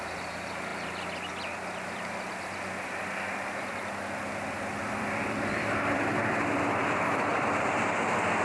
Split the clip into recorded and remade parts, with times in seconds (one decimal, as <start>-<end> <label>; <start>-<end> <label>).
0.0-0.7 recorded; 0.7-1.3 remade; 1.3-4.8 recorded; 4.8-6.8 remade; 6.8-7.3 recorded; 7.3-8.0 remade; 8.0-8.4 recorded